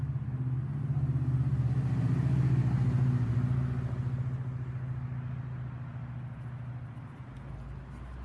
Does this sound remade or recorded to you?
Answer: recorded